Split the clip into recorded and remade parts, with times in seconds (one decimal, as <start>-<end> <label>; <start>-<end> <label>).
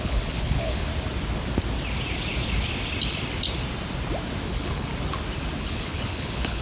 0.0-0.9 remade; 0.9-4.5 recorded; 4.5-4.9 remade; 4.9-5.6 recorded; 5.6-6.6 remade